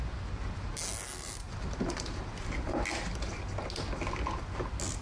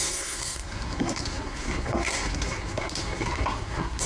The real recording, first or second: first